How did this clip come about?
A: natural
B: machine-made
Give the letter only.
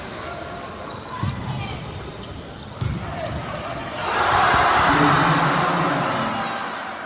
A